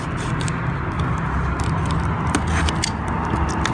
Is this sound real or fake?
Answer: real